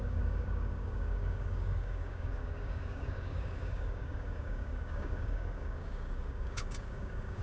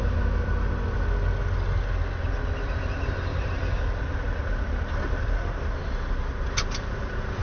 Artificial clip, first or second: first